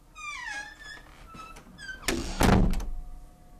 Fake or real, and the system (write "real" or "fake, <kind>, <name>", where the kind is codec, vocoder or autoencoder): real